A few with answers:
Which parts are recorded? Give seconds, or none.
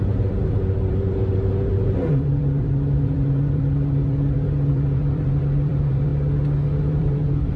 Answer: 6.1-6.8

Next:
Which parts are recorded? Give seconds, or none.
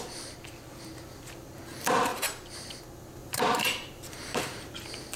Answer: 0.0-2.1; 2.8-3.2; 4.7-5.2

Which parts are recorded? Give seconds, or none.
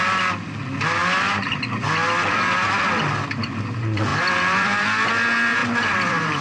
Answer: 0.0-4.1; 5.1-5.6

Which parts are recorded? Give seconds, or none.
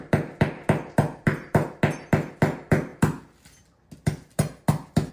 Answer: 0.0-5.1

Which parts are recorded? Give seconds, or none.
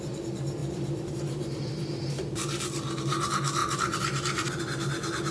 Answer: 0.0-0.6; 2.1-3.6; 4.6-5.3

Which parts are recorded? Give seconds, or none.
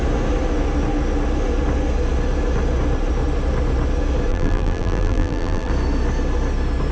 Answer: 0.0-4.3; 5.7-6.9